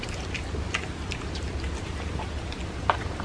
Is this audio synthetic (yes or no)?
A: no